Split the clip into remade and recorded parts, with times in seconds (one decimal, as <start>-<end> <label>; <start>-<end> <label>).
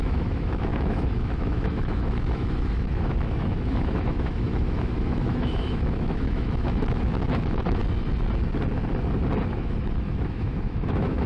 0.0-7.8 remade; 7.8-9.5 recorded; 9.5-11.3 remade